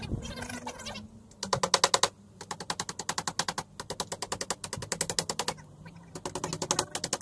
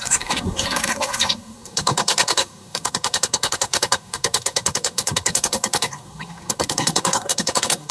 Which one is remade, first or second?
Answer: second